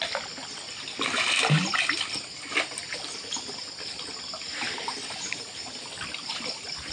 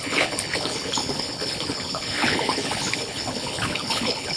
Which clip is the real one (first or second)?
first